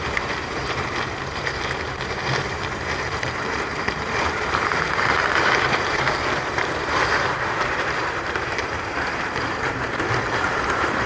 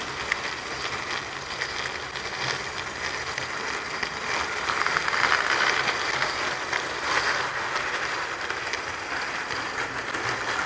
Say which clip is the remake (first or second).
first